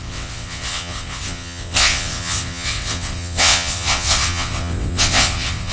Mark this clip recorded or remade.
remade